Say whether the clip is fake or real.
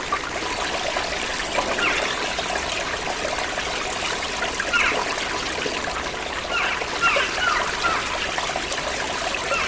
real